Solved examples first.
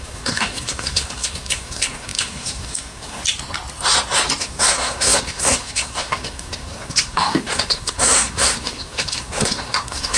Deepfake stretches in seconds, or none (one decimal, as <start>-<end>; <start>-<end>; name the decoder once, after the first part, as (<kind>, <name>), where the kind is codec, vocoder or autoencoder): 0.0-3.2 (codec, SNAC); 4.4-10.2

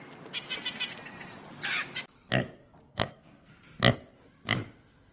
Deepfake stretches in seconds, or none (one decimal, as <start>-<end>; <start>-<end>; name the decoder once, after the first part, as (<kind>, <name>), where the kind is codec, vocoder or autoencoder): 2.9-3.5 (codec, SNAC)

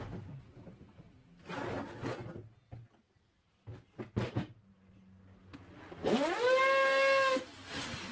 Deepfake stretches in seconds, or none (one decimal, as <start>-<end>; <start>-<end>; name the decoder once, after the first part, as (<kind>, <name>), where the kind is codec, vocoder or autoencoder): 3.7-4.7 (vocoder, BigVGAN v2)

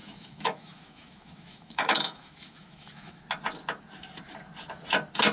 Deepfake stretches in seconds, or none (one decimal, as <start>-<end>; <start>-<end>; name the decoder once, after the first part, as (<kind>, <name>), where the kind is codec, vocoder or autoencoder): 0.0-3.2 (autoencoder, DAC-VAE)